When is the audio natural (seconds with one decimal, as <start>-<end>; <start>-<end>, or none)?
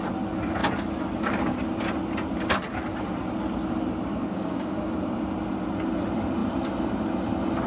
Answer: 0.0-4.1; 4.8-7.7